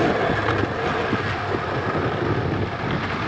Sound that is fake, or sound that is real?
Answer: real